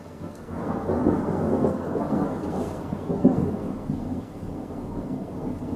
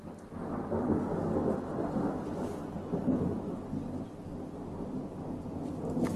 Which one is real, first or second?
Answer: second